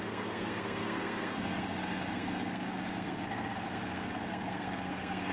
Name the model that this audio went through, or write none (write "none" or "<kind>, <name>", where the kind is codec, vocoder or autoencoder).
codec, SNAC